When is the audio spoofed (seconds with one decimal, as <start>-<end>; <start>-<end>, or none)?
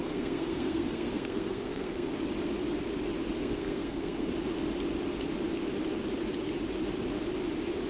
0.0-2.1; 3.4-4.3